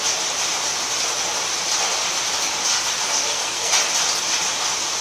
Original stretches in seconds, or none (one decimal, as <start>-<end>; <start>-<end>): 0.0-3.2; 3.7-5.0

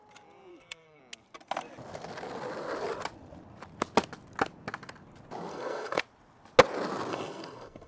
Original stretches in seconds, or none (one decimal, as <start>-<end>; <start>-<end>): 0.0-0.5; 1.0-5.5; 6.0-7.1

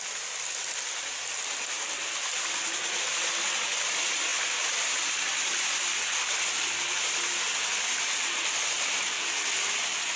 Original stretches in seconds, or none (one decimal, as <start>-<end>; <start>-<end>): 0.0-10.2

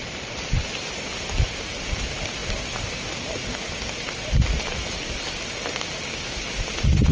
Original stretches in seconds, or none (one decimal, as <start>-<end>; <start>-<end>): 0.0-7.1